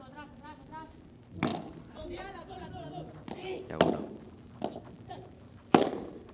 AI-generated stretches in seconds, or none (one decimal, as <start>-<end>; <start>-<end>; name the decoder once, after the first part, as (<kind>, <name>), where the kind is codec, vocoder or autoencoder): 0.0-1.5 (vocoder, BigVGAN v2); 5.3-6.3